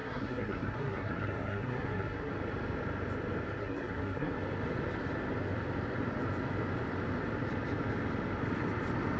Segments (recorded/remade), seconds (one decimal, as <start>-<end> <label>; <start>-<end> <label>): 0.0-2.3 remade; 2.3-3.6 recorded; 3.6-4.3 remade; 4.3-9.2 recorded